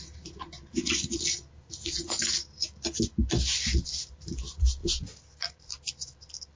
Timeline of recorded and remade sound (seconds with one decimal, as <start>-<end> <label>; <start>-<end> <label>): 0.0-6.6 recorded